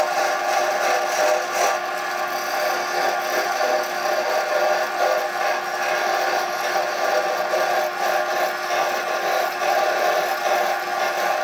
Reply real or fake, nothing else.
real